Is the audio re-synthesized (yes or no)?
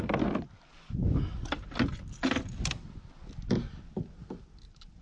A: no